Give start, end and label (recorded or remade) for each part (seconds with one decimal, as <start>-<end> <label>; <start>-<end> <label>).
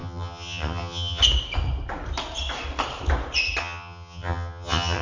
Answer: 0.0-1.2 remade; 1.2-3.6 recorded; 3.6-5.0 remade